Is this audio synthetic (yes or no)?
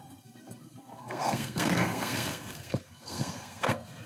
yes